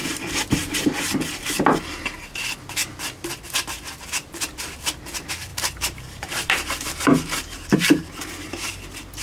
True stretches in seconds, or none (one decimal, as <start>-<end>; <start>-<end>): 0.0-5.5; 8.5-9.2